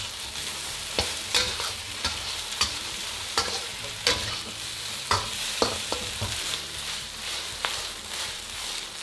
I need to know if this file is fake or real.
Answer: fake